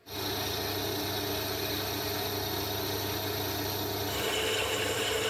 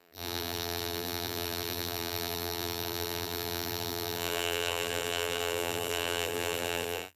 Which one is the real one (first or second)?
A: first